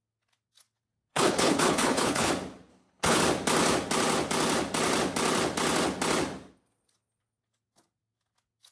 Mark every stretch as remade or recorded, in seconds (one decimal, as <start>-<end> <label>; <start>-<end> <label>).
0.0-1.1 recorded; 1.1-2.3 remade; 2.3-2.7 recorded; 2.7-3.2 remade; 3.2-8.7 recorded